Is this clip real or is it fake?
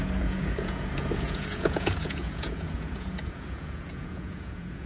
fake